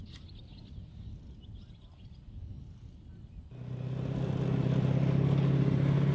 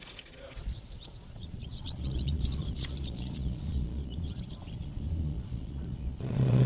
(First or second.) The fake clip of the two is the second